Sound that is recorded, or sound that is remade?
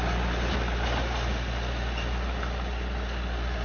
recorded